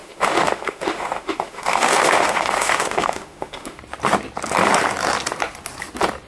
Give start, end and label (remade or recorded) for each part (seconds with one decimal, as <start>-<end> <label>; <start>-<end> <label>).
0.0-3.8 remade; 3.8-6.3 recorded